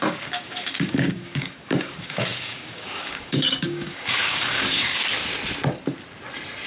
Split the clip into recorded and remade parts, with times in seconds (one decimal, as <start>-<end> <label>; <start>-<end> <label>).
0.0-5.0 remade; 5.0-6.7 recorded